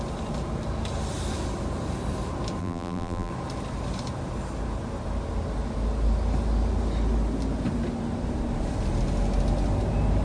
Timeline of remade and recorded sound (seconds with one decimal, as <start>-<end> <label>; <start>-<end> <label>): 0.0-2.6 recorded; 2.6-3.3 remade; 3.3-10.2 recorded